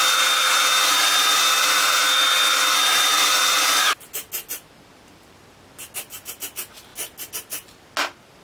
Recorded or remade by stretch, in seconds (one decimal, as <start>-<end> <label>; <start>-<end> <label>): 0.0-8.4 recorded